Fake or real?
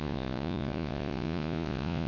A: fake